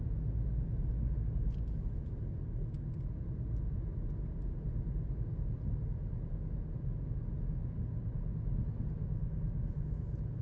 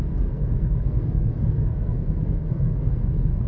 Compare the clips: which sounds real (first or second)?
first